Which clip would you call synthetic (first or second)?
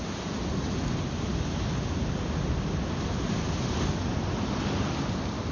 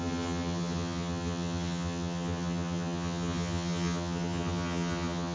second